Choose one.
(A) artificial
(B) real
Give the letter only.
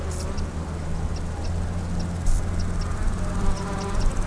B